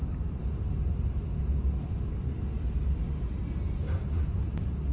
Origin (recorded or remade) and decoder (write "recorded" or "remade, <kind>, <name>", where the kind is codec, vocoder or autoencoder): recorded